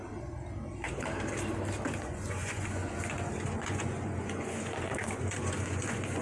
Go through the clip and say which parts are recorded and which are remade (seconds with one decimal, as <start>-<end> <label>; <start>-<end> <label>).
0.0-2.0 recorded; 2.0-6.2 remade